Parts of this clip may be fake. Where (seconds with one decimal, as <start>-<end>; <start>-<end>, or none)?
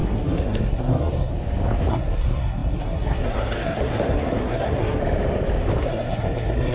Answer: 0.0-1.3; 1.9-5.0; 5.8-6.7